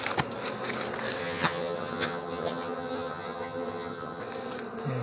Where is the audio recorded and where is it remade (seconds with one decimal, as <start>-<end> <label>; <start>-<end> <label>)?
0.0-1.2 recorded; 1.2-4.2 remade; 4.2-5.0 recorded